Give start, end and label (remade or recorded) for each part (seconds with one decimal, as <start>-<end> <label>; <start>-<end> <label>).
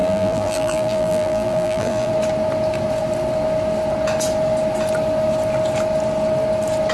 0.0-2.1 remade; 2.1-6.9 recorded